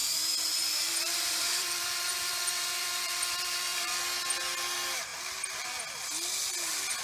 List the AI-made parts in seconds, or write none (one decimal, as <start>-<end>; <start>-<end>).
0.0-4.0; 5.1-5.8